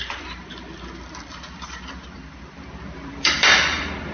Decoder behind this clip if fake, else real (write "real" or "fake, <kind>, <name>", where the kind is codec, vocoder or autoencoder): fake, vocoder, BigVGAN v2